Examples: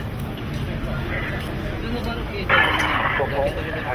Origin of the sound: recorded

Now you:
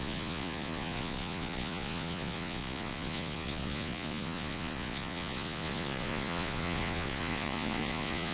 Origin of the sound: remade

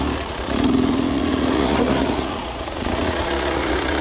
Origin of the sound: remade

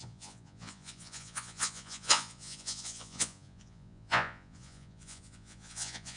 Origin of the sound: remade